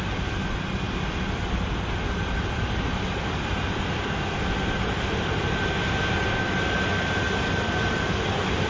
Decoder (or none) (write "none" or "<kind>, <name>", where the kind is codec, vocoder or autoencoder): none